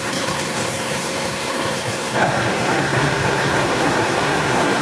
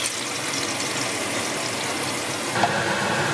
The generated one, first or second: first